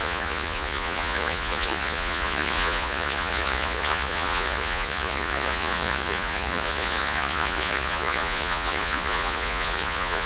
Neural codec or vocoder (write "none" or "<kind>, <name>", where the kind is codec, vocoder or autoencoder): vocoder, Vocos